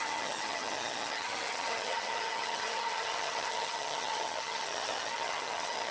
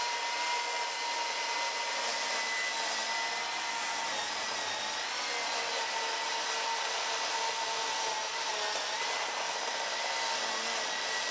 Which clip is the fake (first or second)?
first